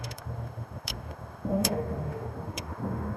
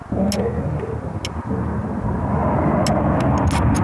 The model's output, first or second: first